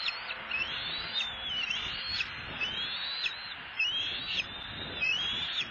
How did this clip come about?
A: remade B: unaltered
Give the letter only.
B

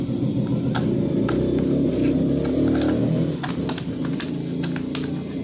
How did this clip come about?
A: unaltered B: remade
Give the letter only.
A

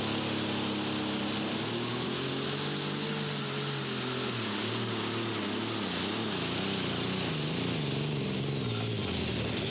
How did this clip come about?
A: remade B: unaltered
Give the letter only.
B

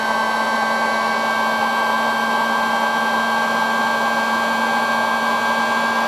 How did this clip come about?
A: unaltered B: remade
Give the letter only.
A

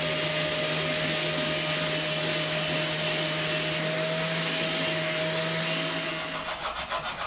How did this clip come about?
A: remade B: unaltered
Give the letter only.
B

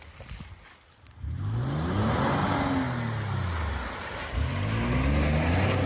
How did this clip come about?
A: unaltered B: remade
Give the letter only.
A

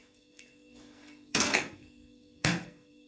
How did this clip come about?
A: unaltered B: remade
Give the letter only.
B